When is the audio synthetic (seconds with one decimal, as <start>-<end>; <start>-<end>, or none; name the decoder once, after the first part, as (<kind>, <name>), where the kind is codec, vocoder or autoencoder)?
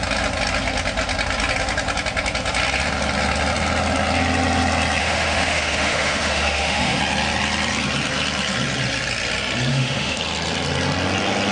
5.0-7.0 (autoencoder, DAC-VAE); 9.7-10.2